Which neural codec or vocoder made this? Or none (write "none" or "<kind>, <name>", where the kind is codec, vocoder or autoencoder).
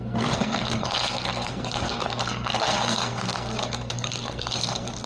codec, SNAC